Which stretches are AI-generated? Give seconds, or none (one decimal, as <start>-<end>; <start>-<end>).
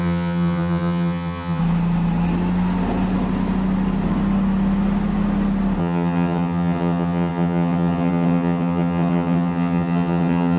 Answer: 0.0-1.6; 5.8-10.6